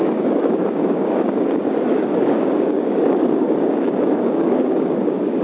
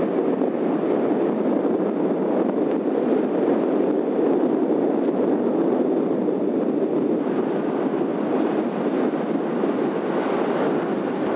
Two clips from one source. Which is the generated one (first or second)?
first